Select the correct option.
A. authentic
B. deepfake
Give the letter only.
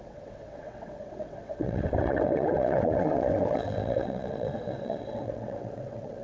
B